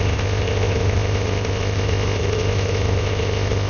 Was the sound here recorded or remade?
remade